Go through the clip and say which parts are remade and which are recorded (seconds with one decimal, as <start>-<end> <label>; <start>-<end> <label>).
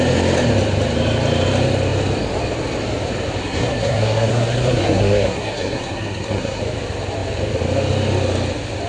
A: 0.0-3.4 recorded; 3.4-6.6 remade; 6.6-8.9 recorded